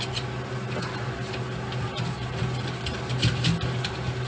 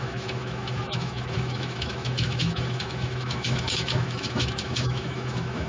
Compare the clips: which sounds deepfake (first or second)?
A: second